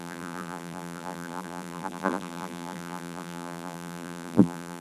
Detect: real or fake fake